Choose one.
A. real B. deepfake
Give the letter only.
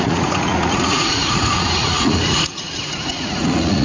B